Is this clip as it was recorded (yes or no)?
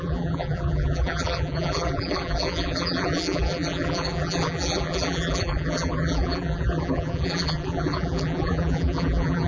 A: no